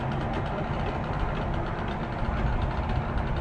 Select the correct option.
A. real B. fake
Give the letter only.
A